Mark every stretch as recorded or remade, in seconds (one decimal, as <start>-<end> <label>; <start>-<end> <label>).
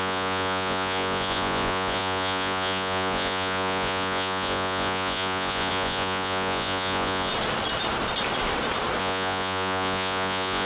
0.0-7.3 remade; 7.3-9.0 recorded; 9.0-10.7 remade